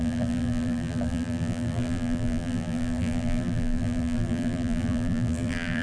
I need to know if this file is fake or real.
fake